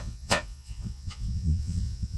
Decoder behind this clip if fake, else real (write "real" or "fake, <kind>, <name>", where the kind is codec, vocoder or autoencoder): fake, vocoder, Vocos